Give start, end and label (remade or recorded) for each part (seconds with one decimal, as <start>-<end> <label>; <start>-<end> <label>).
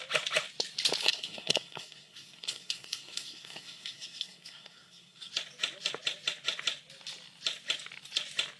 0.0-1.0 recorded; 1.0-5.3 remade; 5.3-8.6 recorded